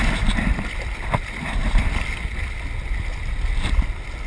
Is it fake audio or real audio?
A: real